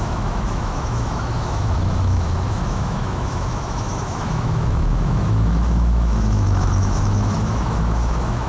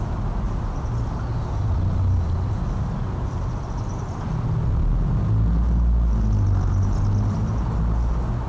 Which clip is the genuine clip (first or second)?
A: second